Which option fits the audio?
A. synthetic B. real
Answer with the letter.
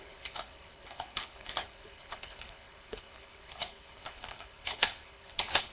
A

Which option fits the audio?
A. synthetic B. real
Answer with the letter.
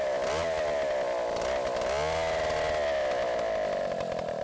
B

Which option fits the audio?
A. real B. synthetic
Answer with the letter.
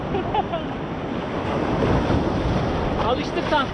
A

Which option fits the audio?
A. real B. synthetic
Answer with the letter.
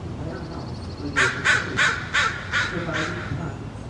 A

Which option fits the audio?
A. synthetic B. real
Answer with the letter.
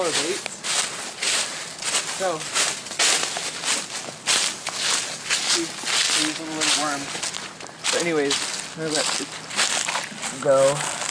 B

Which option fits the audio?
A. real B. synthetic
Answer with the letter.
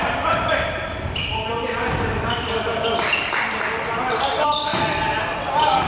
A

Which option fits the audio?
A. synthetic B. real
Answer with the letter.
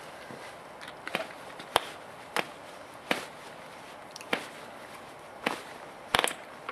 B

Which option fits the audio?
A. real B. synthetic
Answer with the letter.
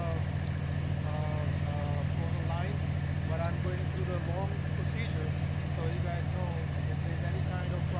A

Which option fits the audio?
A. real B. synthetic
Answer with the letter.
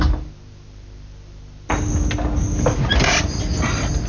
A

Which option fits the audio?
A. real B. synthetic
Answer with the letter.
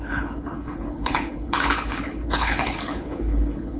B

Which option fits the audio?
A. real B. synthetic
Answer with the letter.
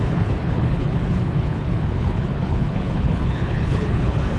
B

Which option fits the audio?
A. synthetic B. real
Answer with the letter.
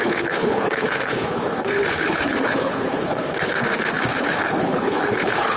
A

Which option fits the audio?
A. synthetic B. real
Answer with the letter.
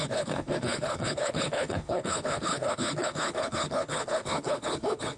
A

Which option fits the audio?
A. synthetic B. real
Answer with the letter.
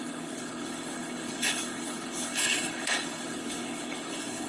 A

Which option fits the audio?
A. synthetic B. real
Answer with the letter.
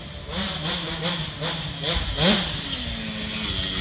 B